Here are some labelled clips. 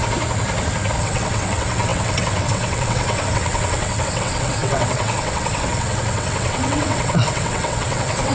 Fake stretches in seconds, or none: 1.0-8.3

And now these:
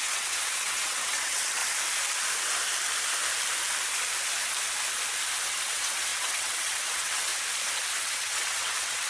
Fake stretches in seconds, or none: 0.0-1.6; 5.5-7.3; 8.0-9.1

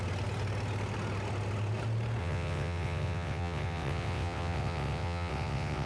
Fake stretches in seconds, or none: 2.2-5.9

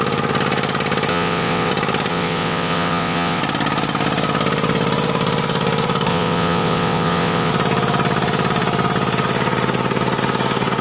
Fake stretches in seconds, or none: 1.1-1.7; 2.1-3.4; 6.1-7.5

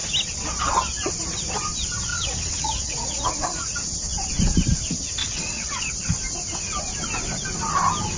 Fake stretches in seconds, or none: 2.1-3.6; 5.2-5.9